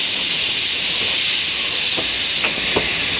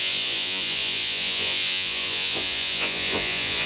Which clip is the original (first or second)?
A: first